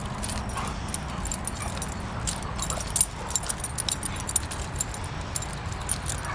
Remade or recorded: recorded